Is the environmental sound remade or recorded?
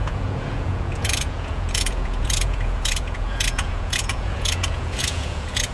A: remade